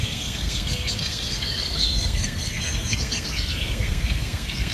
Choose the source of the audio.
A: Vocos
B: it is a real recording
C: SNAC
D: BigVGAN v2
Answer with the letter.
C